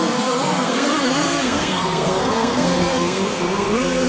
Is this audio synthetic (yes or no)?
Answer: yes